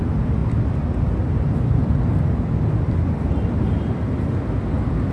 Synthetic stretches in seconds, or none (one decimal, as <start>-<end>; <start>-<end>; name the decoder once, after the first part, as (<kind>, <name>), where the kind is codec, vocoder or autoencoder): none